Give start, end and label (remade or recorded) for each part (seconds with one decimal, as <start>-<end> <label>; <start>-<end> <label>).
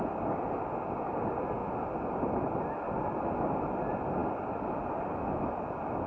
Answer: 0.0-6.1 recorded